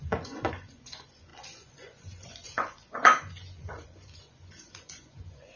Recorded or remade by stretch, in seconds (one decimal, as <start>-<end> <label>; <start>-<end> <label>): 0.0-5.6 remade

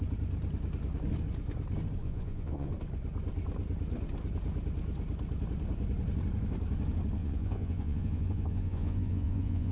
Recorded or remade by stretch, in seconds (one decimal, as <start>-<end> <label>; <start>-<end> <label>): 0.0-2.0 recorded; 2.0-2.7 remade; 2.7-7.2 recorded; 7.2-9.7 remade

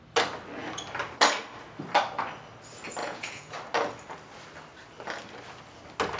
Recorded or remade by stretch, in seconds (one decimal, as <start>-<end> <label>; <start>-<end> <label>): 0.0-3.0 recorded; 3.0-3.5 remade; 3.5-6.2 recorded

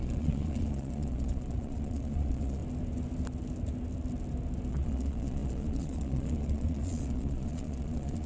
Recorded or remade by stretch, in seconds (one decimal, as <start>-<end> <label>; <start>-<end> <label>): 0.0-2.6 remade; 2.6-4.7 recorded; 4.7-8.3 remade

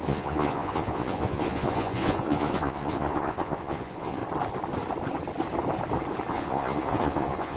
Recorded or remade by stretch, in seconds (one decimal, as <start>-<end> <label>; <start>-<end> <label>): 0.0-4.2 remade; 4.2-6.3 recorded; 6.3-7.6 remade

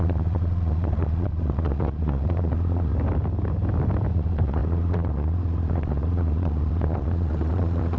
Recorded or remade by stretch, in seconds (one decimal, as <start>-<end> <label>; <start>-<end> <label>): 0.0-2.9 remade; 2.9-4.1 recorded; 4.1-8.0 remade

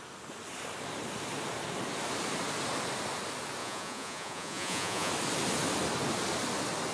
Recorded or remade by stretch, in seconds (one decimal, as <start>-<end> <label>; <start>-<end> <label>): 0.0-3.6 recorded; 3.6-5.1 remade; 5.1-6.9 recorded

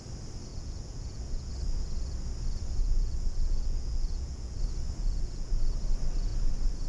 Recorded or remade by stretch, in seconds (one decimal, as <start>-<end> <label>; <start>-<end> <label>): 0.0-0.5 recorded; 0.5-1.5 remade; 1.5-2.8 recorded; 2.8-4.6 remade; 4.6-5.0 recorded; 5.0-5.6 remade; 5.6-6.9 recorded